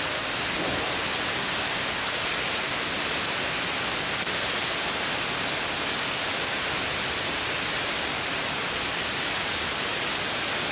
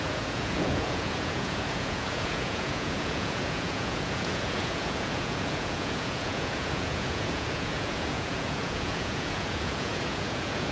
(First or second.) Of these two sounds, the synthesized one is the second